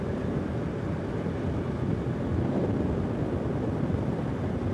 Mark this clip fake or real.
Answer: real